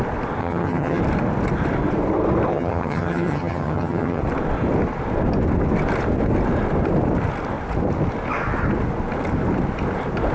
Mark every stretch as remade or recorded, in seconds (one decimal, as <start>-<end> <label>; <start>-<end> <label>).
0.0-0.4 recorded; 0.4-1.0 remade; 1.0-2.5 recorded; 2.5-4.2 remade; 4.2-10.3 recorded